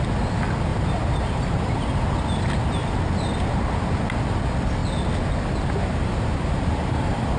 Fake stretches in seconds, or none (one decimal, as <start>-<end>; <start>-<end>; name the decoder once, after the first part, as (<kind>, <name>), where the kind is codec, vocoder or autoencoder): 0.7-1.8 (vocoder, BigVGAN v2); 5.8-7.4